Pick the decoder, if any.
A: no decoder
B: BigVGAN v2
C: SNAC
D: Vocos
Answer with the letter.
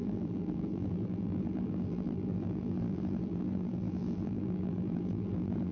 B